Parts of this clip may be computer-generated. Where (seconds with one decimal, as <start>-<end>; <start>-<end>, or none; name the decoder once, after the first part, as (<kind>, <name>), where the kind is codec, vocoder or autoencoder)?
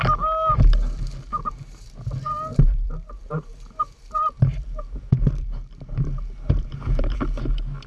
1.3-1.9 (vocoder, BigVGAN v2); 2.5-7.2